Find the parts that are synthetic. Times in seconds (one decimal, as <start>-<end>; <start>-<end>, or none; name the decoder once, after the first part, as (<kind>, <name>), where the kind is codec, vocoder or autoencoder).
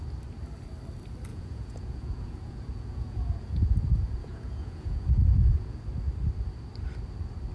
1.3-5.8 (vocoder, Vocos)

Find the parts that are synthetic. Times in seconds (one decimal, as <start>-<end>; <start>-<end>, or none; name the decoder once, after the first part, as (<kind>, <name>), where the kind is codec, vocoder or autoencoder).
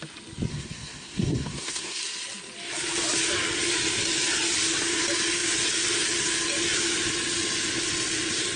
0.5-2.0 (codec, SNAC)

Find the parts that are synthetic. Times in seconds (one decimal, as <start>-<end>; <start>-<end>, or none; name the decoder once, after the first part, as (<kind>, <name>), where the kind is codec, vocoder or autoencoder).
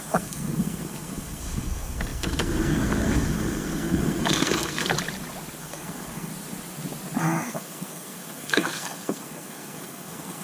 0.0-4.9 (codec, SNAC); 5.6-6.3; 7.2-10.4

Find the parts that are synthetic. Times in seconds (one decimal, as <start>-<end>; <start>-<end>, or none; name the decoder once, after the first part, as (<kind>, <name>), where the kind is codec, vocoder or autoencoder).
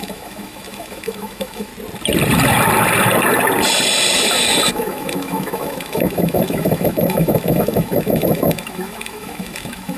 0.0-1.7 (autoencoder, DAC-VAE); 4.7-10.0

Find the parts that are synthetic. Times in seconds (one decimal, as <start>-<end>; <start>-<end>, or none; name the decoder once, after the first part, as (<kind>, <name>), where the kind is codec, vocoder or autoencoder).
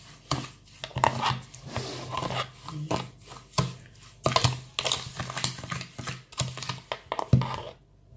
none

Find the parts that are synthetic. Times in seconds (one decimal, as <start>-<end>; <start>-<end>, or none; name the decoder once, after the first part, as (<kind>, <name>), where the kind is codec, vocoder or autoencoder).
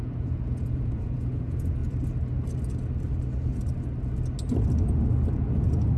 0.0-1.8 (vocoder, Vocos); 5.4-6.0